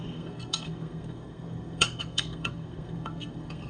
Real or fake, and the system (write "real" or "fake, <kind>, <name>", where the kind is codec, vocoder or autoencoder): fake, codec, SNAC